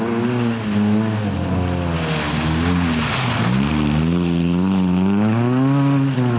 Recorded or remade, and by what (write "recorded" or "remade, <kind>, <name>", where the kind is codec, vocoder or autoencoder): recorded